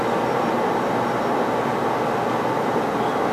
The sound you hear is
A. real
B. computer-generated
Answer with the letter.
A